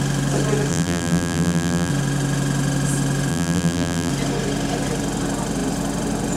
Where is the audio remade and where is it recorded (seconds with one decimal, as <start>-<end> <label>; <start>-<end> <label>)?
0.0-0.7 recorded; 0.7-1.9 remade; 1.9-3.3 recorded; 3.3-4.1 remade; 4.1-6.4 recorded